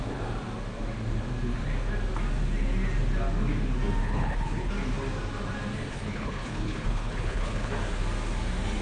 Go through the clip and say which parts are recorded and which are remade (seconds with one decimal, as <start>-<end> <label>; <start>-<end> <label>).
0.0-4.0 recorded; 4.0-4.7 remade; 4.7-5.9 recorded; 5.9-7.7 remade; 7.7-8.8 recorded